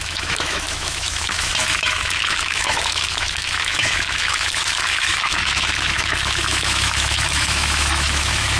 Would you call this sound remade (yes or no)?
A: yes